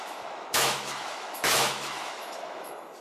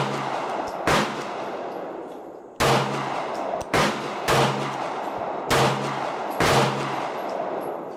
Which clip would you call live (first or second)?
second